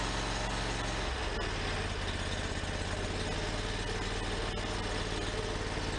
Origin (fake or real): real